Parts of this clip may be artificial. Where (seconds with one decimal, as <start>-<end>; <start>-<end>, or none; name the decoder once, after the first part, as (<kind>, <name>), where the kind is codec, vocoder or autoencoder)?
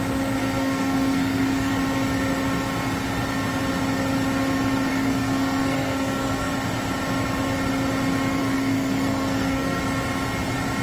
0.4-1.7 (codec, SNAC); 4.9-6.5; 8.4-9.8